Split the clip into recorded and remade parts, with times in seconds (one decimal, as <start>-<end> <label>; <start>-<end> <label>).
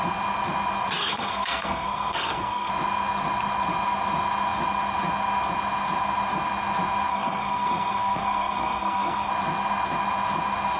0.0-1.0 recorded; 1.0-2.7 remade; 2.7-7.1 recorded; 7.1-9.3 remade; 9.3-10.8 recorded